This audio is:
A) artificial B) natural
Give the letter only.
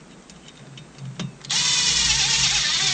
B